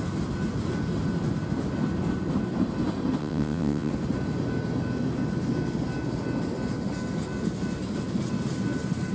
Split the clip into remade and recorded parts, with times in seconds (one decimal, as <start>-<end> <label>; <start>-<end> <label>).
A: 0.0-3.2 recorded; 3.2-3.9 remade; 3.9-9.1 recorded